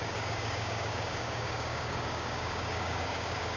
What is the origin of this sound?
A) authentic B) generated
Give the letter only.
B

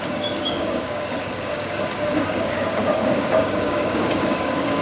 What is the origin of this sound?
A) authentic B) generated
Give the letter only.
B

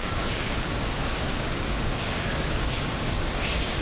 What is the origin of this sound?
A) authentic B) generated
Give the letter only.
B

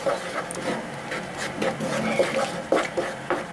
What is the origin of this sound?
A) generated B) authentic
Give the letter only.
B